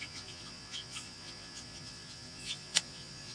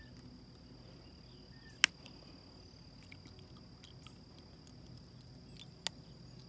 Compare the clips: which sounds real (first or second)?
second